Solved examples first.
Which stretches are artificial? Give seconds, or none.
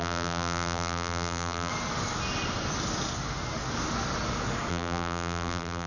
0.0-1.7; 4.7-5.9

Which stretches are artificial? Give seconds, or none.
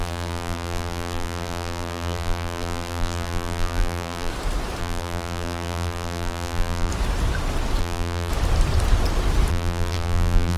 0.0-4.3; 4.8-6.9; 7.8-8.3; 9.5-10.6